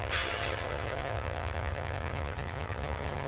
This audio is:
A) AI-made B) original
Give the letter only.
A